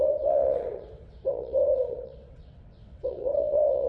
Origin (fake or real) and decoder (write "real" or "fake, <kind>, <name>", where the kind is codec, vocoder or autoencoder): fake, vocoder, WaveNeXt